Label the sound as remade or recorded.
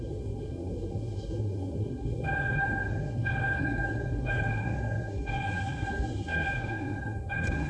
remade